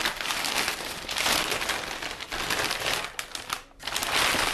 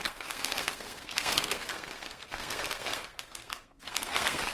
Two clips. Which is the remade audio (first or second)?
second